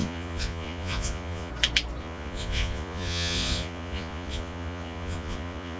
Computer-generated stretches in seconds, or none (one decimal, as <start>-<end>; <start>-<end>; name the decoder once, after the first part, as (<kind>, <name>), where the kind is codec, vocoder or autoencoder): 0.0-1.5 (vocoder, Vocos); 2.0-5.8